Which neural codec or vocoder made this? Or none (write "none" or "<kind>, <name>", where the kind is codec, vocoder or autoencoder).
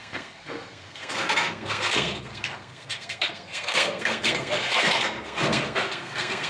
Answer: codec, SNAC